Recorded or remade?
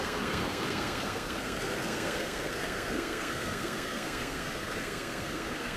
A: remade